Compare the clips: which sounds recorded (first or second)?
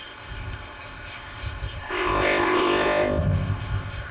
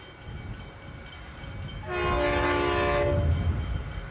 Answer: second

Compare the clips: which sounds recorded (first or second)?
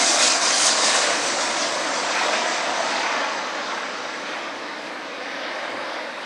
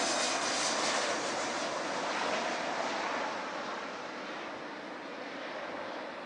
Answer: second